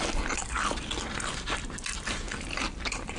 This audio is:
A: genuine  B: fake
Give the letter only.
A